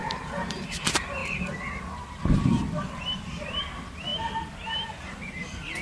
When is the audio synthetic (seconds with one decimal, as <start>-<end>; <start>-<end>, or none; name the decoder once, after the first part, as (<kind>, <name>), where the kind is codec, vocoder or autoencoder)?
0.5-4.1 (vocoder, BigVGAN v2); 4.9-5.8